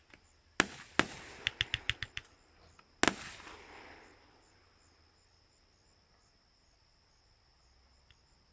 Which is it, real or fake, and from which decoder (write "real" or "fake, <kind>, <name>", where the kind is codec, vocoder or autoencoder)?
real